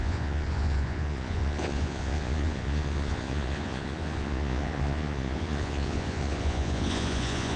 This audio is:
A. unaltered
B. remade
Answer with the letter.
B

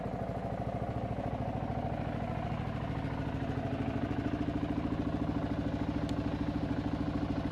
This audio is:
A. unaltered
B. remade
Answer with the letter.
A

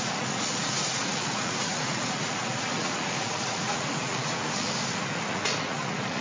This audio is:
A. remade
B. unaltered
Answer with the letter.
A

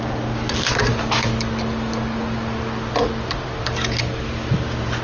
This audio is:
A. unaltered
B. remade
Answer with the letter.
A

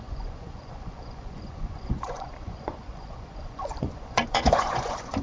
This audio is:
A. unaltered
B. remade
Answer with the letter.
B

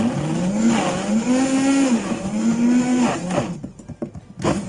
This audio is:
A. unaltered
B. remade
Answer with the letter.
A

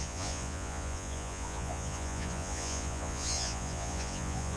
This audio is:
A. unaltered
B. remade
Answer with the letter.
B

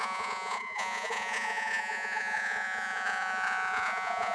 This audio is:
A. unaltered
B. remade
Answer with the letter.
B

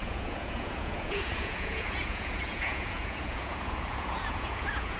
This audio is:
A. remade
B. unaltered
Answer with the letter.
A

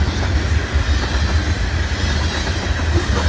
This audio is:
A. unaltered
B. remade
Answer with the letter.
A